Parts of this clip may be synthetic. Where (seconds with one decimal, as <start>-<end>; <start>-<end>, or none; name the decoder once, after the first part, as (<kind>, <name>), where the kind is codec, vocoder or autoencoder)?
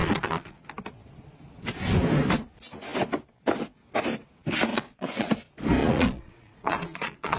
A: 0.0-0.7 (vocoder, Vocos); 4.7-5.3; 5.8-7.4